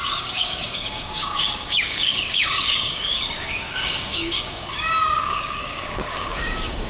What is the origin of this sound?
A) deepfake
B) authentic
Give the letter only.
A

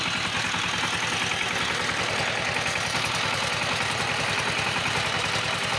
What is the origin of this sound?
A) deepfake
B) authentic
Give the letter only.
B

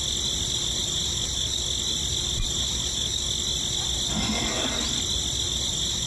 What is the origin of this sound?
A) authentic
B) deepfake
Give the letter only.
A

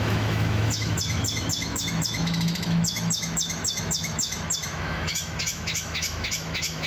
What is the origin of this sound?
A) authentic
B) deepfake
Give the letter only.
B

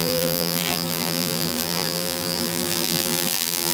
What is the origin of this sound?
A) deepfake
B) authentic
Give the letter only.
A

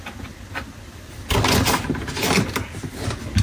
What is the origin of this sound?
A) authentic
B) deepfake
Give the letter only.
A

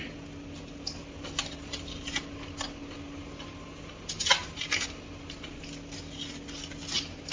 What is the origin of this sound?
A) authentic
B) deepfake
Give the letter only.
A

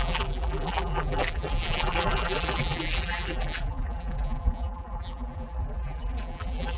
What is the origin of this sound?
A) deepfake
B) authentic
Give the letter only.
A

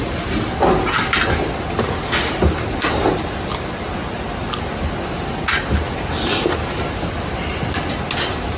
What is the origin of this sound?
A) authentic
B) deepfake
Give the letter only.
A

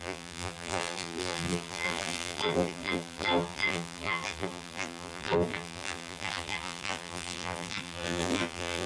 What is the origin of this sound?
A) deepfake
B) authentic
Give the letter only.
A